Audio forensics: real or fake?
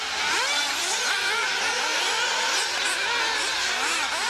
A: real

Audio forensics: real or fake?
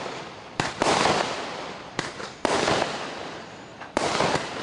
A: fake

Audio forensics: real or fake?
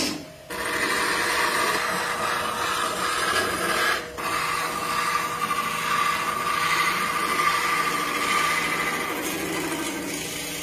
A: real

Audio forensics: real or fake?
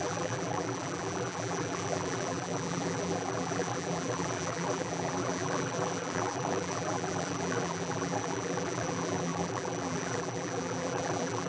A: fake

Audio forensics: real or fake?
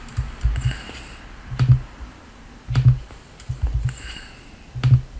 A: real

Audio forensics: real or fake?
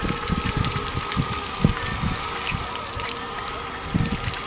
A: real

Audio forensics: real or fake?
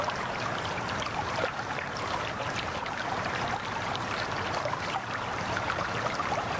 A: fake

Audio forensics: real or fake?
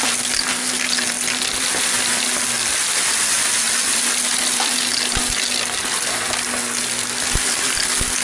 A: real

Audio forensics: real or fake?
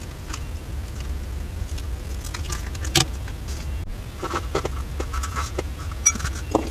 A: real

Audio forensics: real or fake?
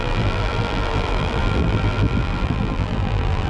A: fake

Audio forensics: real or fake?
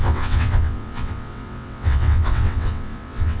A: fake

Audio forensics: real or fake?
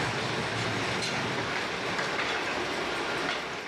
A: real